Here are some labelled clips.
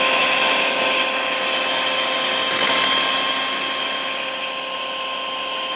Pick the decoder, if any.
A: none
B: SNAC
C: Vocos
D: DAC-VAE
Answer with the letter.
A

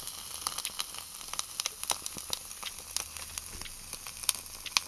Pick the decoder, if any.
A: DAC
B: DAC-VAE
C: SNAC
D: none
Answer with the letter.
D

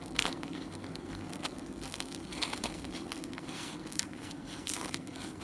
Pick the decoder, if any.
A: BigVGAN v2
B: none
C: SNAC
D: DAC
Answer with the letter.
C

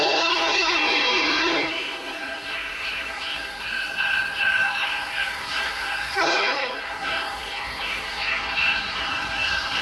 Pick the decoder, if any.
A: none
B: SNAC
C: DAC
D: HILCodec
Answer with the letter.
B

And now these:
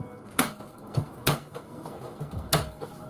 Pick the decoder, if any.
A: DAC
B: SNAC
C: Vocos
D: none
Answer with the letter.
B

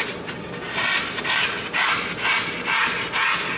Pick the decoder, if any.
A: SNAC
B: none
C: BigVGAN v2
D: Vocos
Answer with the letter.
B